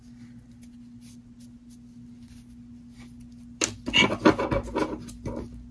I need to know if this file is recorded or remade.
recorded